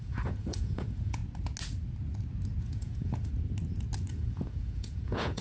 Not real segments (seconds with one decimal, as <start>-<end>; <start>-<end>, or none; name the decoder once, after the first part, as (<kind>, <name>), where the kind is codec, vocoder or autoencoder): 0.0-1.2 (vocoder, Vocos); 2.6-3.3; 4.1-5.4